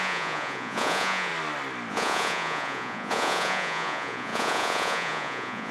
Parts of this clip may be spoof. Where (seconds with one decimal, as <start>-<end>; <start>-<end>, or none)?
0.0-1.3; 1.9-5.7